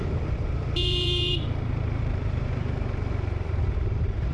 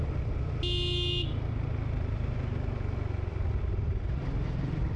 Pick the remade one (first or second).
first